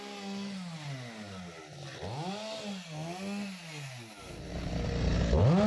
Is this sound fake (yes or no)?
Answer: no